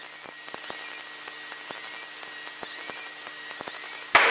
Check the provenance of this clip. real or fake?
real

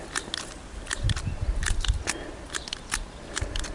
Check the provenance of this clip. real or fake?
real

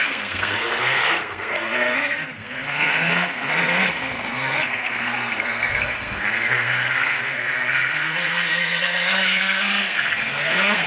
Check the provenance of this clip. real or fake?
fake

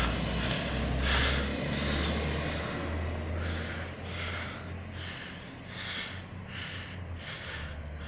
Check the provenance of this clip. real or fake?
real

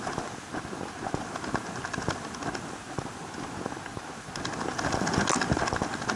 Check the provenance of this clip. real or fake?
real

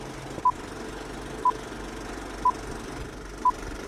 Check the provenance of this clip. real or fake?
real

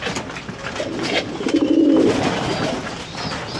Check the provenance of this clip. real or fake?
real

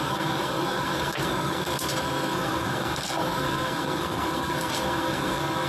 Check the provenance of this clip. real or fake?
fake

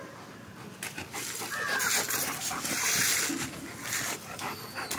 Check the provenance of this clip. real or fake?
real